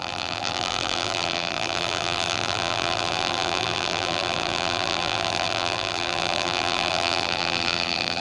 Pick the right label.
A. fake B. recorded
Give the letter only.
A